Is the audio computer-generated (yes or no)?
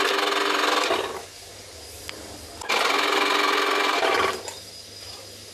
no